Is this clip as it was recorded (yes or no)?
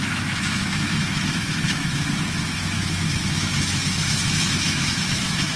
no